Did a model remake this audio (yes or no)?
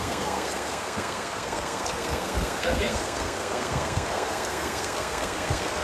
yes